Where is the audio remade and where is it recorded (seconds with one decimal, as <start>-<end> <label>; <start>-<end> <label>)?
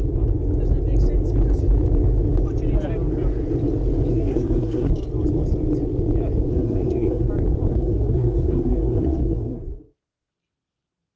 0.0-4.1 recorded; 4.1-4.9 remade; 4.9-6.5 recorded; 6.5-7.3 remade; 7.3-7.7 recorded; 7.7-10.3 remade; 10.3-11.2 recorded